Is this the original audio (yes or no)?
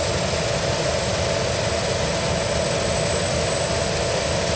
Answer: yes